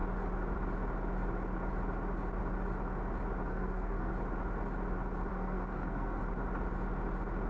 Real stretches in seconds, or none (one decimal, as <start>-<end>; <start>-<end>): 0.0-3.5; 4.1-5.3; 6.2-7.5